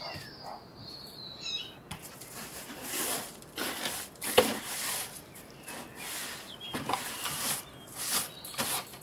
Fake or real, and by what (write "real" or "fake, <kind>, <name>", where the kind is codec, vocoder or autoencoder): real